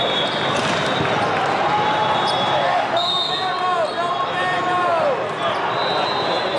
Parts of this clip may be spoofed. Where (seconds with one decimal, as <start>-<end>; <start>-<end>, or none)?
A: 2.7-3.3